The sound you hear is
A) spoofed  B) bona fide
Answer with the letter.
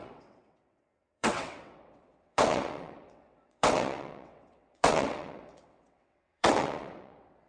A